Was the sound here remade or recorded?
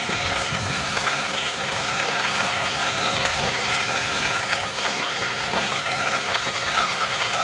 remade